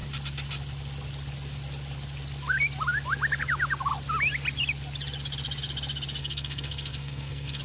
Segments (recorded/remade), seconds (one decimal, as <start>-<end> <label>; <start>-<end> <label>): 0.0-6.2 recorded; 6.2-7.6 remade